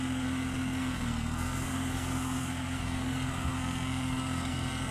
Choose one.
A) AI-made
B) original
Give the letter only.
A